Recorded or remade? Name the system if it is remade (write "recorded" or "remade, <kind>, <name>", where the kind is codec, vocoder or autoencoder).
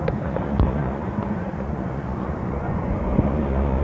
remade, vocoder, Vocos